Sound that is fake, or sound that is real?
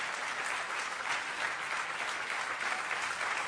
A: real